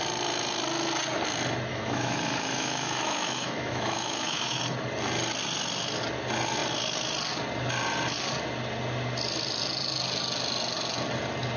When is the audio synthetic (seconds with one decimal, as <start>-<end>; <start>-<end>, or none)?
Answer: 1.7-4.6